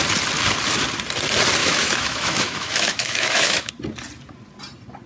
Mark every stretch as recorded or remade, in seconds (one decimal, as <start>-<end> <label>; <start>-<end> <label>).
0.0-1.6 recorded; 1.6-3.7 remade; 3.7-5.1 recorded